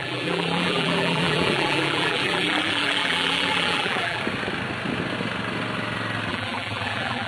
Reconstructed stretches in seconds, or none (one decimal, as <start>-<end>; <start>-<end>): 0.0-4.2; 6.3-7.3